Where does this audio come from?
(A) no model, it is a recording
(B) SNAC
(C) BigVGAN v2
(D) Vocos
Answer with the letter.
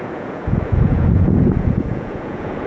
D